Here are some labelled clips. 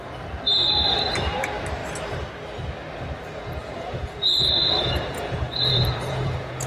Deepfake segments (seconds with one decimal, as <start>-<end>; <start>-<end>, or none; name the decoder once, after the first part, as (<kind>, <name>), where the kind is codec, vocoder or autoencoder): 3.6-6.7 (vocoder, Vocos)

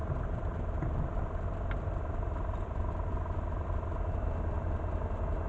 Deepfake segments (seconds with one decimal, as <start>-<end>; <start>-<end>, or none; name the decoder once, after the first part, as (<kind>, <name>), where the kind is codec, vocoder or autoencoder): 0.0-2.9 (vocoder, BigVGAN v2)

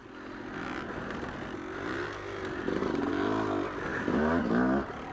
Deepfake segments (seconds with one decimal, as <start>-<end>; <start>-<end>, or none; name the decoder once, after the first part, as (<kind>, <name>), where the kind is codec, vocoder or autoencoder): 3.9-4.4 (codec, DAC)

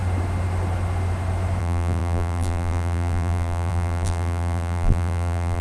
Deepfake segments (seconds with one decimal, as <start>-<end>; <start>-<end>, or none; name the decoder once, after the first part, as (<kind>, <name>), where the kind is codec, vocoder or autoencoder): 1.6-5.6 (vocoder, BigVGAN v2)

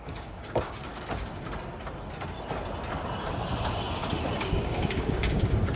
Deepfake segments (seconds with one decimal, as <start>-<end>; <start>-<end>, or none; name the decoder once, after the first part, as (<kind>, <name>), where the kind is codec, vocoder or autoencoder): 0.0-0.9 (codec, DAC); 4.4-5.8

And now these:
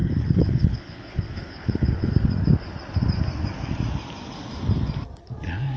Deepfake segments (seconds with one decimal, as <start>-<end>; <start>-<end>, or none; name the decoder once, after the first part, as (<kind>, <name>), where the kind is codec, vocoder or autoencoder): 0.0-2.1 (codec, HILCodec)

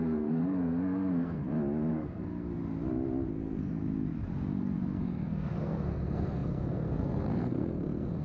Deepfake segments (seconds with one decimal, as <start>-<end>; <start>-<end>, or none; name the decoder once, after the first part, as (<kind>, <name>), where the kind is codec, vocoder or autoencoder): 0.0-1.4 (codec, SNAC); 1.9-2.6; 3.3-3.8; 4.6-8.2